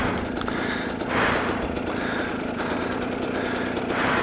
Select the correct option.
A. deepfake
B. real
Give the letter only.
B